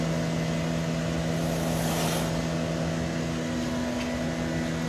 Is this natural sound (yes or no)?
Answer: yes